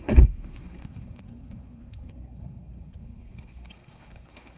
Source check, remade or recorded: remade